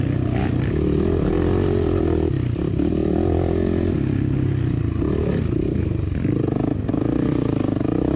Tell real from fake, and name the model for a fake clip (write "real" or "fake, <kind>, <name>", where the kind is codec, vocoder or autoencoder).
real